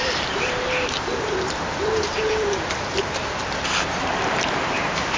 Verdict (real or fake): fake